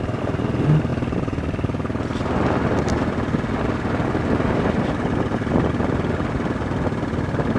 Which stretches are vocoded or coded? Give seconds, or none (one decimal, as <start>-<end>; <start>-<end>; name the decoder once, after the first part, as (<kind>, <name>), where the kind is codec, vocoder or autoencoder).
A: none